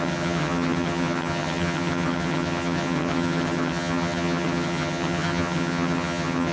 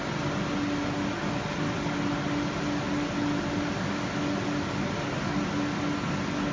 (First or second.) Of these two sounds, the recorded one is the second